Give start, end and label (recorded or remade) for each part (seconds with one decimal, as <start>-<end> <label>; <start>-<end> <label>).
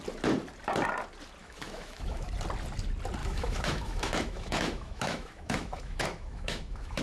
0.0-1.4 recorded; 1.4-2.3 remade; 2.3-3.2 recorded; 3.2-7.0 remade